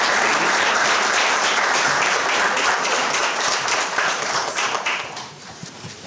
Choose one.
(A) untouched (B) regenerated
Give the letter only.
B